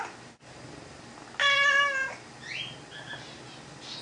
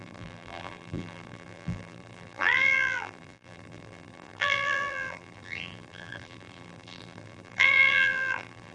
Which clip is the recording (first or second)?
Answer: first